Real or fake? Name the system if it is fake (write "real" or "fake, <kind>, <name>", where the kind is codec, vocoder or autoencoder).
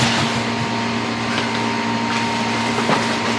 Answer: real